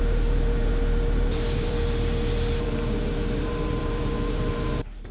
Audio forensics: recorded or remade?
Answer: remade